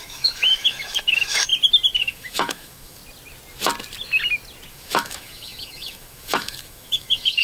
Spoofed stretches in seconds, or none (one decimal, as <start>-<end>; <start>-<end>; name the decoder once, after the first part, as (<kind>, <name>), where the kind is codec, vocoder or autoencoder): 0.0-1.5 (autoencoder, DAC-VAE); 2.0-3.0; 4.7-7.4